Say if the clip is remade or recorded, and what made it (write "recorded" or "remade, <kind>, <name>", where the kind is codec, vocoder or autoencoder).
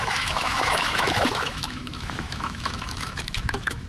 remade, autoencoder, DAC-VAE